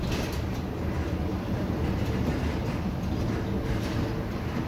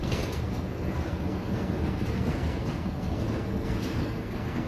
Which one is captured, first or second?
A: first